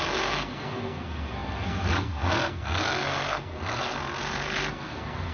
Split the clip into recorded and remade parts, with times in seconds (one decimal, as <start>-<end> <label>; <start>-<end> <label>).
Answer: 0.0-5.3 remade